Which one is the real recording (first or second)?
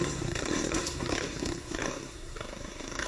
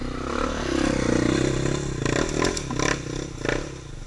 second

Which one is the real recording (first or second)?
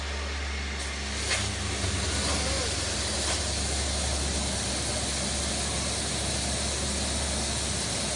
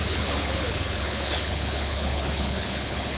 first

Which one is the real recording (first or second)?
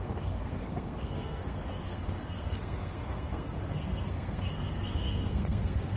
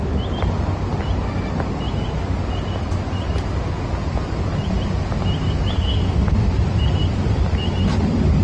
second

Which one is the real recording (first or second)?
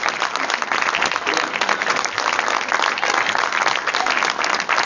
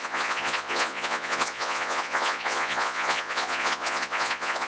first